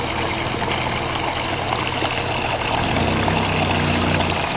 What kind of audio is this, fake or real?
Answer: real